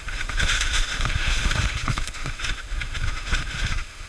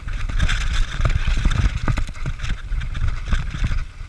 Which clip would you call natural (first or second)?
second